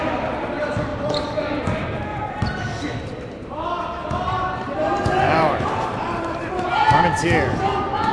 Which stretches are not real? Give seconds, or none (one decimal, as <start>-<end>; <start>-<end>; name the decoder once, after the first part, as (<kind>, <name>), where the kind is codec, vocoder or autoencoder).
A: 2.1-7.0 (vocoder, BigVGAN v2)